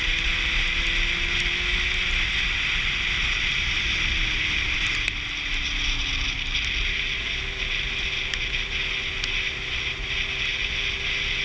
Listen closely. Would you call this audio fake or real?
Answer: real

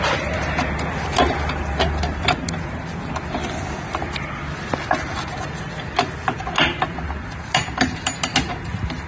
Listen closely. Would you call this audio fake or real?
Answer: real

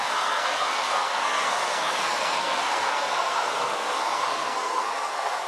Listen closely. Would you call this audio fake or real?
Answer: fake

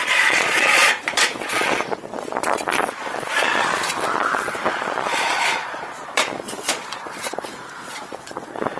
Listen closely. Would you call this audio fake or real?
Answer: fake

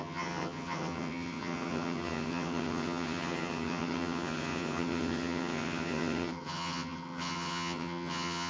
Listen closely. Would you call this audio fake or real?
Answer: fake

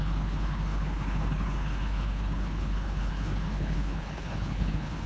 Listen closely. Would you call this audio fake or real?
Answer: fake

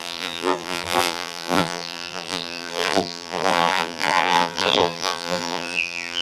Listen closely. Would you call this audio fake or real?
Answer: fake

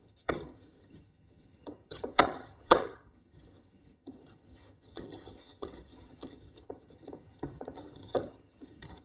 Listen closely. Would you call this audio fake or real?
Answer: fake